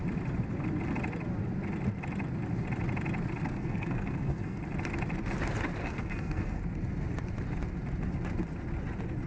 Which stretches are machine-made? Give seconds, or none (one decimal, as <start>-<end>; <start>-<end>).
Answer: 3.4-4.6; 5.8-6.6